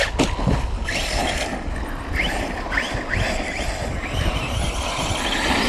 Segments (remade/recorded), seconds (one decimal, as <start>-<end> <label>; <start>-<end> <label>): 0.0-5.7 recorded